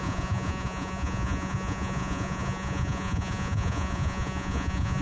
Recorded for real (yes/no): no